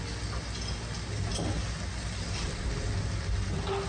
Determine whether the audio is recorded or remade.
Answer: recorded